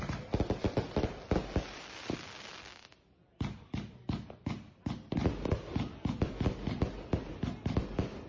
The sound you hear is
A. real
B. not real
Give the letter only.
A